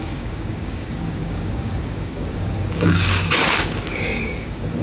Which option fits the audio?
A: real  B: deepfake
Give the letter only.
B